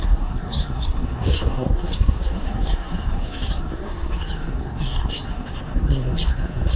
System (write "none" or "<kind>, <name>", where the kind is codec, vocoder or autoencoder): codec, SNAC